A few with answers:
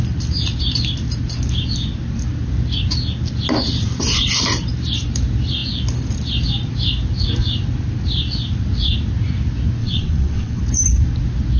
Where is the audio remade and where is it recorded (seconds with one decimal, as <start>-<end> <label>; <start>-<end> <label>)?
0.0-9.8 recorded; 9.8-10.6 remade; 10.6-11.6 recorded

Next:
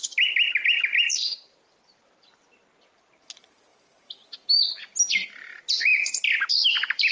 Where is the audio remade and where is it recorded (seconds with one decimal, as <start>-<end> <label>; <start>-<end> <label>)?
0.0-7.1 recorded

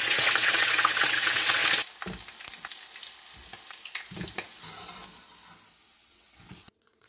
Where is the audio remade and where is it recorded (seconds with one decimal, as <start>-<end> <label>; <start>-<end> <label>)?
0.0-1.6 remade; 1.6-5.9 recorded; 5.9-7.1 remade

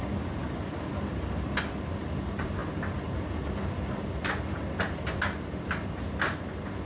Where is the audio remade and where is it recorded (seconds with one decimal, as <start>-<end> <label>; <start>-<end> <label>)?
0.0-6.9 recorded